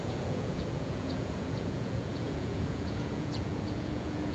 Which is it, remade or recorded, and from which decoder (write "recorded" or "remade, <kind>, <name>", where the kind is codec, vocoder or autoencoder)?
remade, vocoder, Vocos